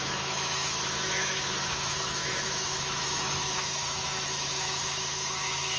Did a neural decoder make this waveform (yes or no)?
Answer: yes